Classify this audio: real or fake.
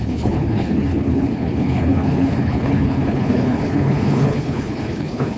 fake